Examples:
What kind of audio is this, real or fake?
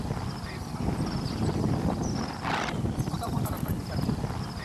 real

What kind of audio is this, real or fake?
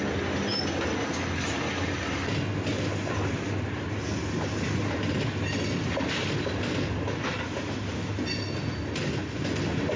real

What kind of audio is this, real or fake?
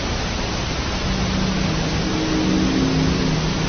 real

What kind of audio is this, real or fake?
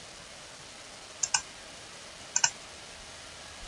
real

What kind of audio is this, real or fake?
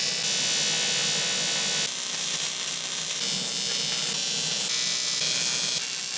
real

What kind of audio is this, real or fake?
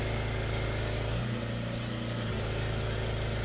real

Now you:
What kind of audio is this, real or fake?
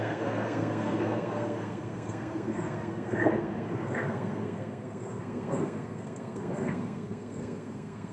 fake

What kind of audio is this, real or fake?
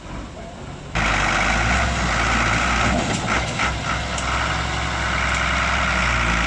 real